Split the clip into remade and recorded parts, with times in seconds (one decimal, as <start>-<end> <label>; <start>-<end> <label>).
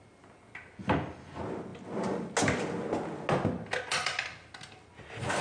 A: 0.0-5.4 recorded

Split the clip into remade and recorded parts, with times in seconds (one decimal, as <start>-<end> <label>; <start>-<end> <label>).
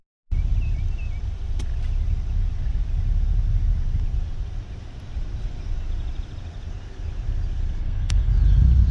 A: 0.0-7.8 recorded; 7.8-8.3 remade; 8.3-8.9 recorded